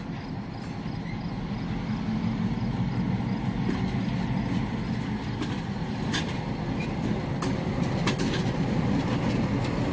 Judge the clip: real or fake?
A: real